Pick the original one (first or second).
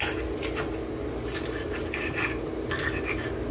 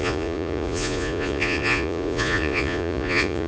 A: first